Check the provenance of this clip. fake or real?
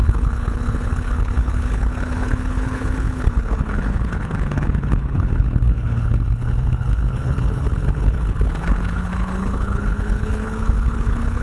fake